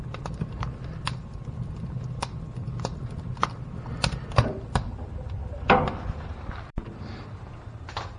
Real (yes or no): no